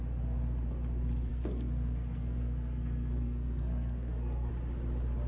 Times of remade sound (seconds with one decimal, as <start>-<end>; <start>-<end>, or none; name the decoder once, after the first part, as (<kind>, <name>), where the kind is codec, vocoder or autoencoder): 1.3-4.5 (codec, SNAC)